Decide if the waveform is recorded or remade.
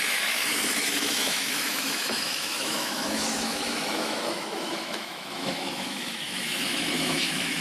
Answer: remade